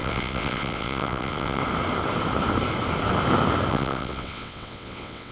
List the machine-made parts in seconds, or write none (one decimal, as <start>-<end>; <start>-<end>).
0.0-1.6; 3.7-5.3